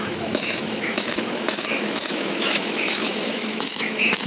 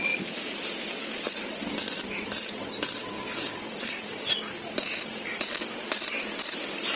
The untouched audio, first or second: second